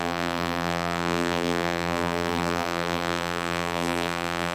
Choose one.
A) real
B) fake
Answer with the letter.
B